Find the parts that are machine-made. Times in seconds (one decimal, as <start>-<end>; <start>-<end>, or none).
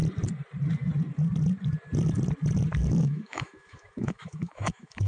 3.0-5.1